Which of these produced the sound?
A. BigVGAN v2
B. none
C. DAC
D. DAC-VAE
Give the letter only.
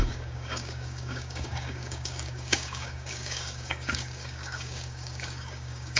C